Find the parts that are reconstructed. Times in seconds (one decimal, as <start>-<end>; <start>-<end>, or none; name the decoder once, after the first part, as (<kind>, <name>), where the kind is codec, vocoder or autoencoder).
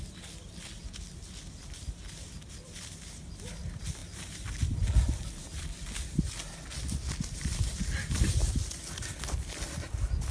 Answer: none